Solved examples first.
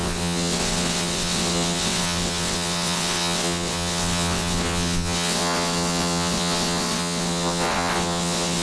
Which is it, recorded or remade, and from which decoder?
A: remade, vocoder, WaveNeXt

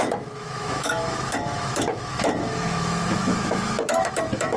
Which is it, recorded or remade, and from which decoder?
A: remade, autoencoder, DAC-VAE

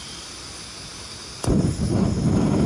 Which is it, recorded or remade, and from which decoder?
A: recorded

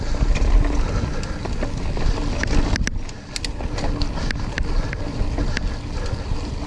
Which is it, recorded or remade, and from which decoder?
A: recorded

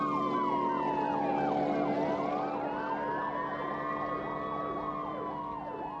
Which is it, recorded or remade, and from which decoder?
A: recorded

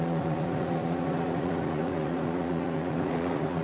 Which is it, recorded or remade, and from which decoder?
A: remade, vocoder, Vocos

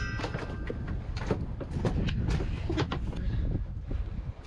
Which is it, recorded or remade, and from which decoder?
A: recorded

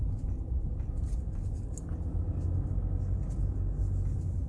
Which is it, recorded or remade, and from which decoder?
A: recorded